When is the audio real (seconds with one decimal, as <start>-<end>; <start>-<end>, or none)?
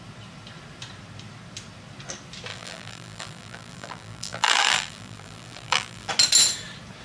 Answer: 0.0-2.5; 6.1-7.0